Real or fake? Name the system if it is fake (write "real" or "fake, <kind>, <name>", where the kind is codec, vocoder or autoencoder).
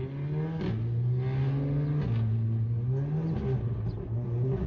real